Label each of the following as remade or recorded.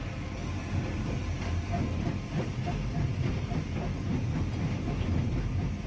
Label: recorded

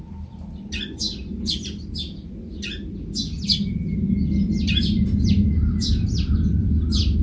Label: recorded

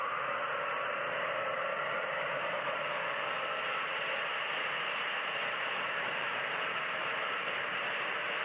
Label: remade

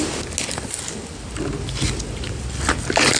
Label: recorded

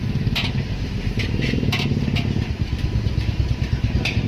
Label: recorded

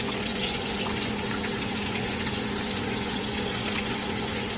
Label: remade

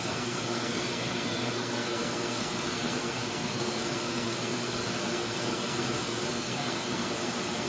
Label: remade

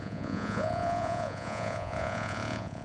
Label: remade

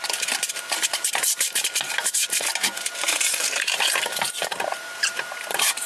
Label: remade